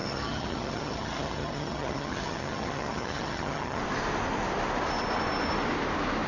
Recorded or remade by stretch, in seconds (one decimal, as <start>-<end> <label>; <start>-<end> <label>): 0.0-3.8 remade; 3.8-6.3 recorded